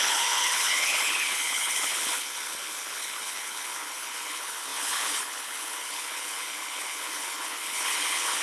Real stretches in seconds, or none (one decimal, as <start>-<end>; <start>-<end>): none

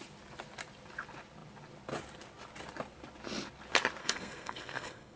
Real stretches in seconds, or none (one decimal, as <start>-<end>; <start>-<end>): 0.0-4.0

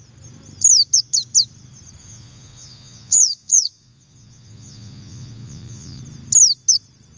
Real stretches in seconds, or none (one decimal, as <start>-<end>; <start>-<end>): 0.0-2.0; 6.0-7.2

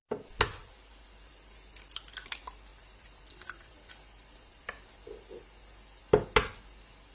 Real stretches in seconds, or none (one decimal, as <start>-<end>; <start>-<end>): 0.0-0.6; 1.3-2.7; 5.1-7.1

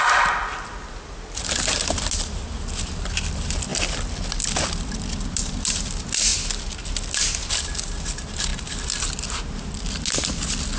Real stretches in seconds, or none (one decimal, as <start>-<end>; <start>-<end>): 0.0-10.8

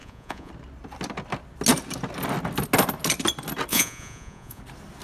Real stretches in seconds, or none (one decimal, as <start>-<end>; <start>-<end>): 0.5-3.7; 4.6-5.0

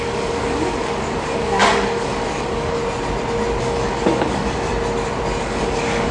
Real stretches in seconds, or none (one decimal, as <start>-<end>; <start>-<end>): 2.8-3.6; 4.7-5.4

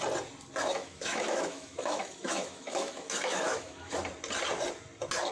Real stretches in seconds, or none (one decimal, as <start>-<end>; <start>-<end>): 0.0-0.7; 3.9-5.3